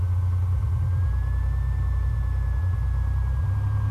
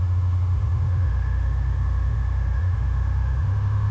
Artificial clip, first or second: second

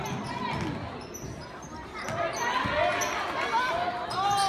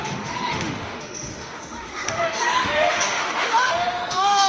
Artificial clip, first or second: second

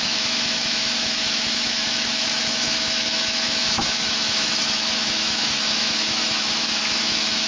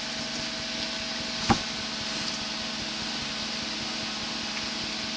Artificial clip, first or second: first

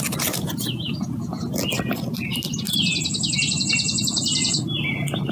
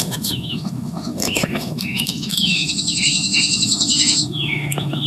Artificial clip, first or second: second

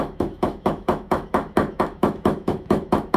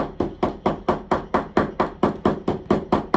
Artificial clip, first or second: first